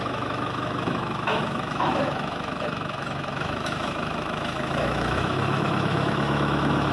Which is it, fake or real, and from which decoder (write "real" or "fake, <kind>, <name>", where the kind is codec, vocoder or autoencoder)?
fake, autoencoder, DAC-VAE